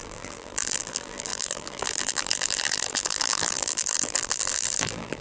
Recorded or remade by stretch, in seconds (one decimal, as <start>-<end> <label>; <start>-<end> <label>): 0.0-5.2 remade